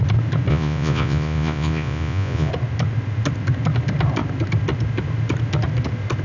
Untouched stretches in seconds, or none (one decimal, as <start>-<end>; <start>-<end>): 0.0-0.5; 2.5-6.2